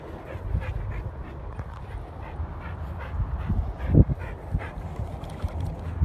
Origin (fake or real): real